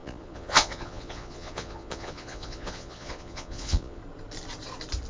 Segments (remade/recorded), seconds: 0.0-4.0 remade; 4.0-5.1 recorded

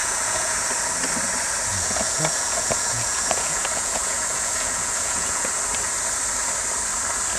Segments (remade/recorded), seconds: 0.0-0.7 remade; 0.7-1.7 recorded; 1.7-5.5 remade; 5.5-7.4 recorded

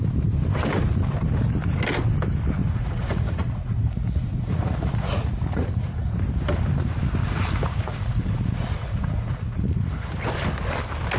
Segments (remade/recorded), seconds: 0.0-2.6 recorded; 2.6-6.2 remade; 6.2-7.2 recorded; 7.2-10.1 remade; 10.1-11.2 recorded